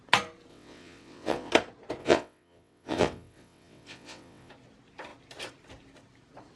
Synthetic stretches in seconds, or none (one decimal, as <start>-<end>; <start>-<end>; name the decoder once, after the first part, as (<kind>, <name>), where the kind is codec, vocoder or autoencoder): 0.5-1.5 (vocoder, WaveNeXt); 2.0-4.5